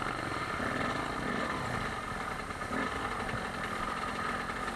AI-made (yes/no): no